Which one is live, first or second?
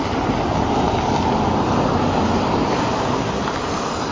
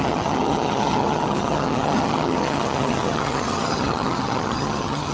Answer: first